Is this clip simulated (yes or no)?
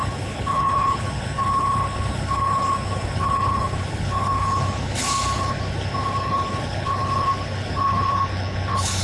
yes